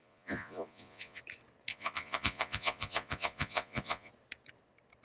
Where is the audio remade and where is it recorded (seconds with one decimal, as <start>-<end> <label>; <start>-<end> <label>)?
0.0-1.2 remade; 1.2-1.7 recorded; 1.7-4.1 remade; 4.1-5.0 recorded